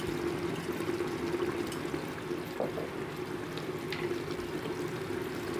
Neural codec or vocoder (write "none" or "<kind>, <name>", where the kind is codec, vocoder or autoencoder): none